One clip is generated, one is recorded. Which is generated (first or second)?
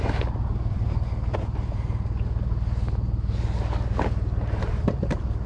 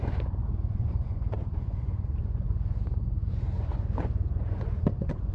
second